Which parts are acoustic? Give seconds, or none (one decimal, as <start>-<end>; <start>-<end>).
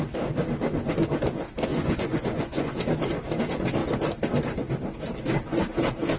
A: 0.0-1.7; 2.8-6.2